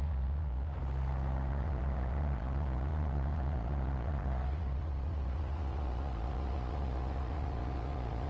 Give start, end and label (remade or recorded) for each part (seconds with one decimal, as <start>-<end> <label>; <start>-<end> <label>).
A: 0.0-0.8 remade; 0.8-1.5 recorded; 1.5-8.3 remade